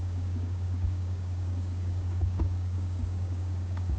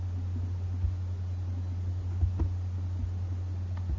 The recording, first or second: second